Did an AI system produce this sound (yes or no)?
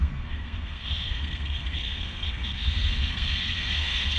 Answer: yes